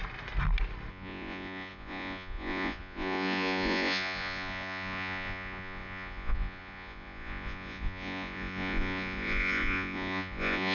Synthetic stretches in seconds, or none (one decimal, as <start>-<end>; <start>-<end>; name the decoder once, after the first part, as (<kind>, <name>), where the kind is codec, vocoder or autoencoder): 0.9-10.7 (vocoder, Vocos)